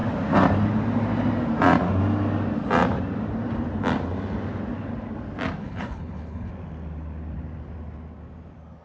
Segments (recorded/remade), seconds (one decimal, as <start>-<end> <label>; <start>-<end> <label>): 0.0-5.6 recorded; 5.6-6.5 remade; 6.5-8.8 recorded